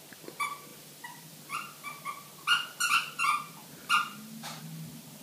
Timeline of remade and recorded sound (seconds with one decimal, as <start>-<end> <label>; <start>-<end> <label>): 0.0-5.2 recorded